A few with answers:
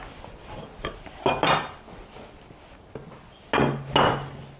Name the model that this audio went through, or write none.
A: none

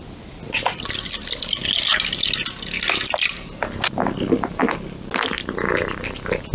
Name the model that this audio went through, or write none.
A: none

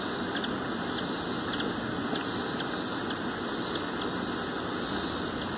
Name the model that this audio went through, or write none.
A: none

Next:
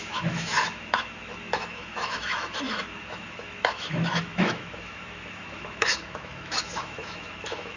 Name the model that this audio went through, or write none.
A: autoencoder, DAC-VAE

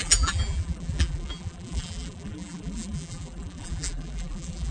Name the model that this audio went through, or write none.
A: vocoder, BigVGAN v2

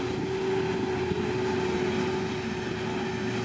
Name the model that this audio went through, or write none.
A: none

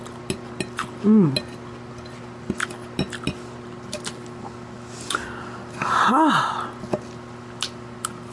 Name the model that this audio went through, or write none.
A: none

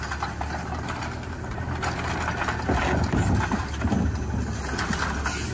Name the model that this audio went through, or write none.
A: none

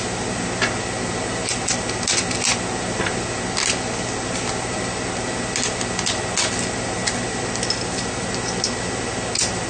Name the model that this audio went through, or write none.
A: none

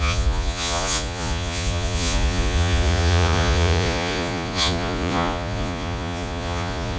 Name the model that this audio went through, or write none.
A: vocoder, Vocos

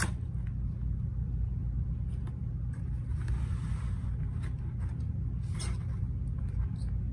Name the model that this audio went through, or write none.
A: none